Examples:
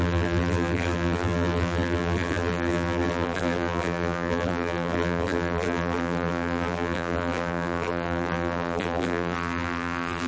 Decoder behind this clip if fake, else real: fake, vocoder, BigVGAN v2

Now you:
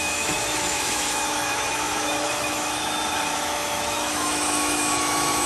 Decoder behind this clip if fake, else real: fake, autoencoder, DAC-VAE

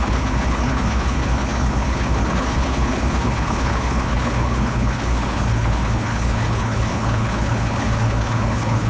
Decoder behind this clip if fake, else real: fake, codec, HILCodec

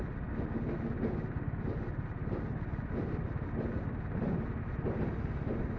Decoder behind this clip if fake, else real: real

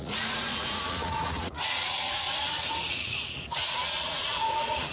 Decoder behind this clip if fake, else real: fake, vocoder, Vocos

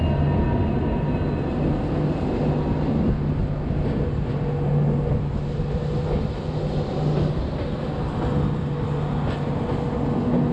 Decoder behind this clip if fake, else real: real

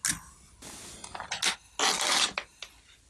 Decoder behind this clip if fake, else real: real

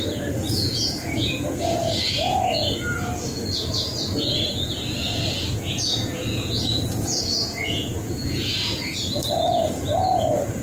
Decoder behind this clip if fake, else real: fake, vocoder, Vocos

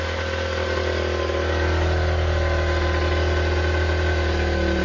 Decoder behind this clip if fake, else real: real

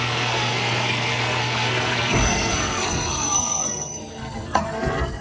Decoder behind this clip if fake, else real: fake, codec, SNAC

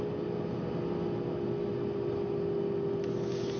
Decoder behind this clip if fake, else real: real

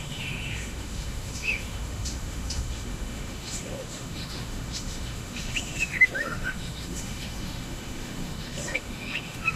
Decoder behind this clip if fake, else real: fake, autoencoder, DAC-VAE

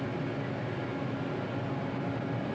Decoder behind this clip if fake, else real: real